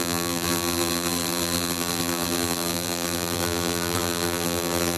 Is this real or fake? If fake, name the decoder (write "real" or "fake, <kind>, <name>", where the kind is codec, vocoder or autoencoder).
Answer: fake, vocoder, BigVGAN v2